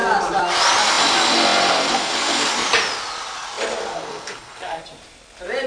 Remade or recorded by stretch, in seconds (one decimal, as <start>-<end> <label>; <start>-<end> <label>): 0.0-1.9 recorded; 1.9-2.5 remade; 2.5-3.8 recorded; 3.8-4.8 remade; 4.8-5.7 recorded